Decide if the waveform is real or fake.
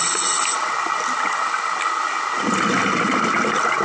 real